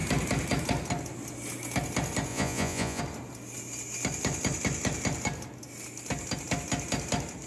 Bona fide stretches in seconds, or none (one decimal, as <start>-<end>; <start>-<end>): 0.0-2.3; 3.0-7.5